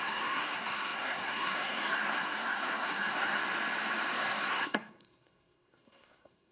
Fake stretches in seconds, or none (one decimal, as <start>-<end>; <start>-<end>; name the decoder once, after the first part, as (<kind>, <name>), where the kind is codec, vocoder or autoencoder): 0.0-3.4 (codec, SNAC); 4.1-6.5